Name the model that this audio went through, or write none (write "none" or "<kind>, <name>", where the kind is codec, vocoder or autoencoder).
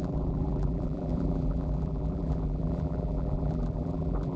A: vocoder, BigVGAN v2